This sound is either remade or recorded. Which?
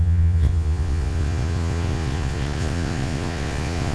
remade